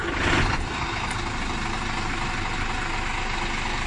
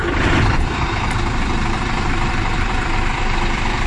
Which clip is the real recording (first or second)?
first